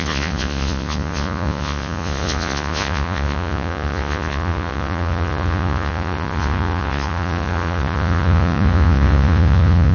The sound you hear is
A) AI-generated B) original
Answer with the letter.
A